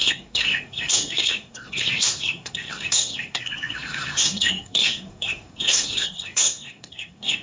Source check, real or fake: fake